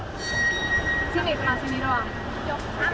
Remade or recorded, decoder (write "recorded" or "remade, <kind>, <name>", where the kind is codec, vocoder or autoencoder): remade, vocoder, BigVGAN v2